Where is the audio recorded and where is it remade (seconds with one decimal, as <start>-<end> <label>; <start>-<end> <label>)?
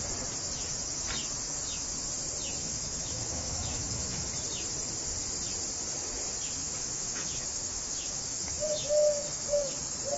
0.0-2.6 recorded; 2.6-4.3 remade; 4.3-6.6 recorded; 6.6-9.7 remade; 9.7-10.2 recorded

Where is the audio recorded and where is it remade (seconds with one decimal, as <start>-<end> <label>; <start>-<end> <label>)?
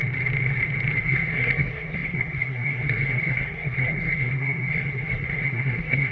0.0-1.0 recorded; 1.0-6.1 remade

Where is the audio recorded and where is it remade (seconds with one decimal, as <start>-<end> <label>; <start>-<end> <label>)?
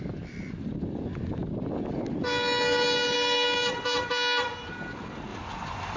0.0-6.0 recorded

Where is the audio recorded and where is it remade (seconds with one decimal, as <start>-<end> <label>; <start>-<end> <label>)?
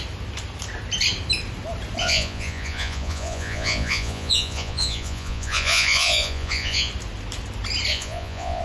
0.0-2.0 recorded; 2.0-6.9 remade; 6.9-7.9 recorded; 7.9-8.6 remade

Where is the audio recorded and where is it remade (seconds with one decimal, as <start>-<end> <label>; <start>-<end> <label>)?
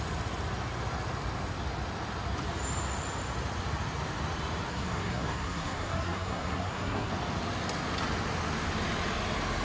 0.0-4.7 recorded; 4.7-7.1 remade; 7.1-9.6 recorded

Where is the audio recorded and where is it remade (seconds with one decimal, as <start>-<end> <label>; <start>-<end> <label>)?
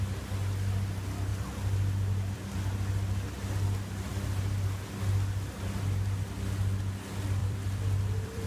0.0-1.3 recorded; 1.3-2.4 remade; 2.4-7.4 recorded; 7.4-8.5 remade